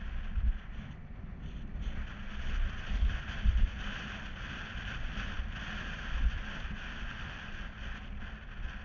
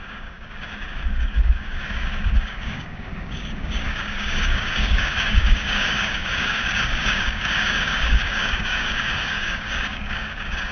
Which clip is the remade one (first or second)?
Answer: second